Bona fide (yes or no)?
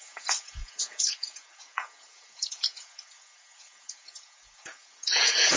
no